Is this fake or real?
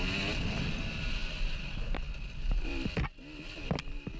real